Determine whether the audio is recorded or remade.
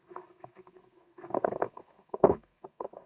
remade